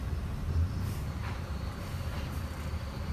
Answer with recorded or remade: remade